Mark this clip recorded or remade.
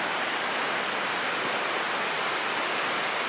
recorded